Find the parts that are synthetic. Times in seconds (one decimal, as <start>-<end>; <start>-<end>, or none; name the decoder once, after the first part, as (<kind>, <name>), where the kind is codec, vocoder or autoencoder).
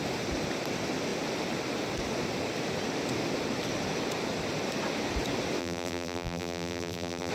5.6-7.3 (vocoder, BigVGAN v2)